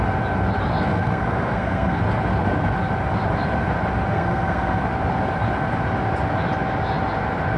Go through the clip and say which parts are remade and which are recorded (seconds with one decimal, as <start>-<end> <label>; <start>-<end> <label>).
0.0-0.9 recorded; 0.9-2.0 remade; 2.0-4.1 recorded; 4.1-4.8 remade; 4.8-7.6 recorded

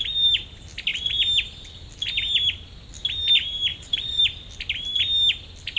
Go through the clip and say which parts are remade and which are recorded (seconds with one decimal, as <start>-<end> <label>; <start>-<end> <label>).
0.0-3.7 recorded; 3.7-4.2 remade; 4.2-5.8 recorded

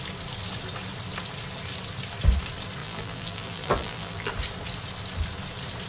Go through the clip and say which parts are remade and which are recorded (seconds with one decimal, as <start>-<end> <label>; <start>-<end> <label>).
0.0-2.8 recorded; 2.8-4.3 remade; 4.3-5.9 recorded

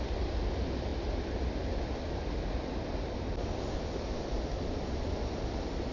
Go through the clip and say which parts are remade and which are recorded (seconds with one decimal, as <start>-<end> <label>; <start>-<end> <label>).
0.0-5.9 recorded

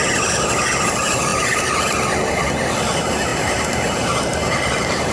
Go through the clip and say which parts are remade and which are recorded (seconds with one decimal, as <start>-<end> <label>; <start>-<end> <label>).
0.0-5.1 recorded